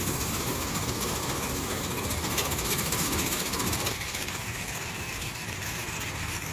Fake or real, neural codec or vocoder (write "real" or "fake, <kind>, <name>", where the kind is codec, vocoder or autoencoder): fake, codec, DAC